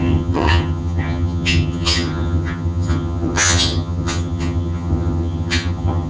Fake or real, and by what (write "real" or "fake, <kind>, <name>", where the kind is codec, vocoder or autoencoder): fake, vocoder, HiFi-GAN